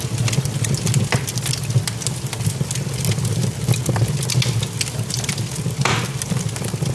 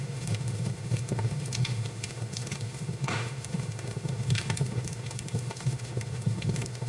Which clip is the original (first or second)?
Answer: first